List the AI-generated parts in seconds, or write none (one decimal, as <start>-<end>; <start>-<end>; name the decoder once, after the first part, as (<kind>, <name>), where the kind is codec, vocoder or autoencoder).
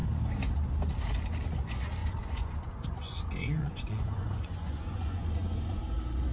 2.0-5.8 (vocoder, Vocos)